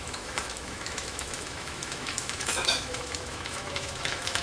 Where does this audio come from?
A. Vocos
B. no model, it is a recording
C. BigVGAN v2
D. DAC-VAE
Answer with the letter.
D